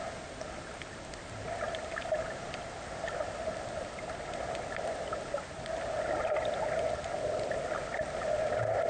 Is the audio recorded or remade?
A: recorded